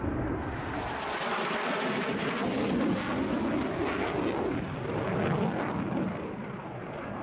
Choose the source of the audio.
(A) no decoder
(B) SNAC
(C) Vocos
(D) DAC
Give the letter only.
A